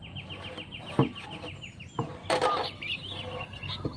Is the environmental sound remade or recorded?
recorded